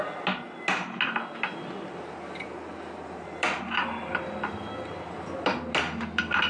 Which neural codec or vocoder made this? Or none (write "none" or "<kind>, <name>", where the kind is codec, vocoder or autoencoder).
none